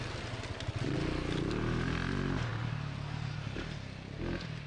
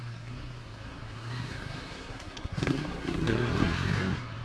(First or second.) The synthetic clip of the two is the second